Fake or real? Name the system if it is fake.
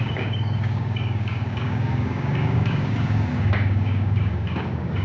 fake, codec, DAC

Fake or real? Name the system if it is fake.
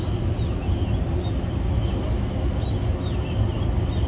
real